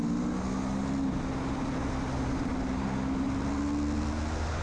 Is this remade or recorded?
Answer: recorded